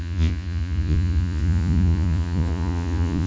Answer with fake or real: fake